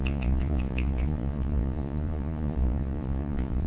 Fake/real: fake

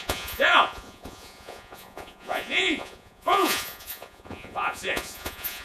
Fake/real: fake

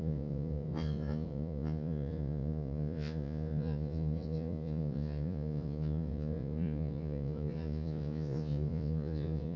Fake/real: fake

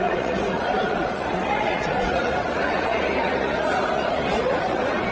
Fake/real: fake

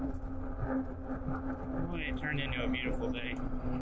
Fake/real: real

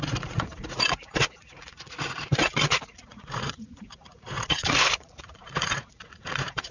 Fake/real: fake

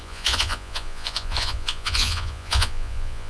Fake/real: fake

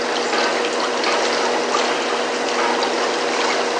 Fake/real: real